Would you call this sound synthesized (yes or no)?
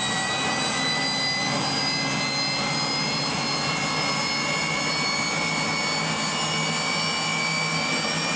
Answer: no